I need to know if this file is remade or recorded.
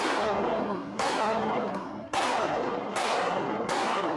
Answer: remade